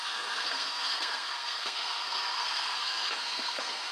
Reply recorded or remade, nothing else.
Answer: remade